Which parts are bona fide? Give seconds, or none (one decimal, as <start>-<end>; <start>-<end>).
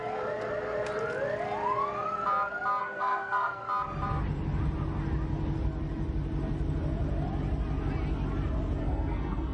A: 0.0-2.8; 3.6-8.8